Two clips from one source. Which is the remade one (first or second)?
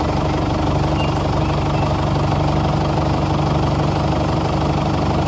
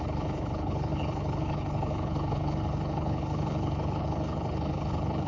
second